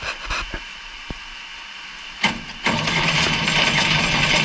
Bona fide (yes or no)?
yes